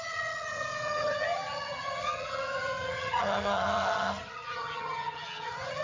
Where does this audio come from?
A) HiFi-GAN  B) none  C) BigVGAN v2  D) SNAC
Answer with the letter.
A